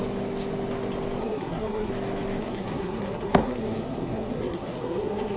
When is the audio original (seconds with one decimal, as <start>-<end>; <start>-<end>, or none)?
0.0-1.2; 1.9-2.4